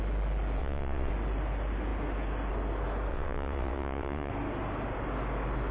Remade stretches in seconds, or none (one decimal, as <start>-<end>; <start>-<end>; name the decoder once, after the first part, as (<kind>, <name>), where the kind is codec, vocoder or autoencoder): 0.6-1.1 (vocoder, WaveNeXt); 3.1-4.3